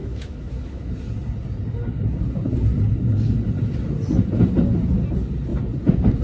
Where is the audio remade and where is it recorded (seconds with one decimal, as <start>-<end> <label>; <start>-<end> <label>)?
0.0-0.9 remade; 0.9-6.2 recorded